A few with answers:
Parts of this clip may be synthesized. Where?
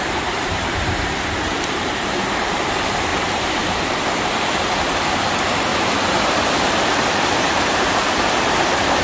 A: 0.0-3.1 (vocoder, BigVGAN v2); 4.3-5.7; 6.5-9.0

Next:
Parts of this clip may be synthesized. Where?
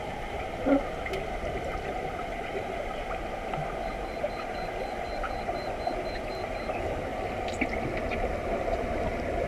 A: 0.0-7.1 (vocoder, BigVGAN v2); 8.0-9.5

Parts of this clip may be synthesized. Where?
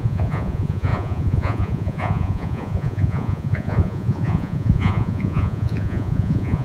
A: 0.0-6.6 (vocoder, Vocos)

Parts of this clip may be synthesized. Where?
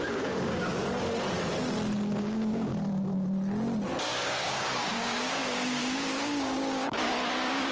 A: 0.0-0.8 (codec, DAC); 2.2-2.7; 4.0-7.7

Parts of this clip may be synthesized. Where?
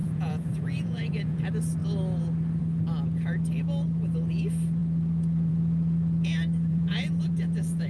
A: 0.0-1.4 (vocoder, Vocos); 6.7-7.9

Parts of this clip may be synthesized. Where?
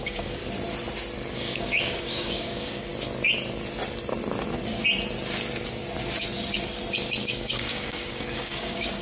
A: 0.0-0.4 (codec, DAC); 1.3-2.9; 7.2-9.0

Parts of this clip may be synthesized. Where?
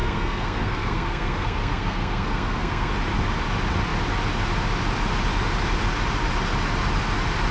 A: 0.0-2.9 (codec, SNAC)